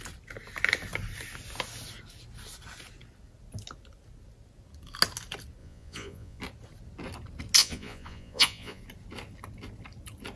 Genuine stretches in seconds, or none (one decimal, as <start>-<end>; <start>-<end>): 0.0-5.6; 6.4-7.6; 8.8-10.4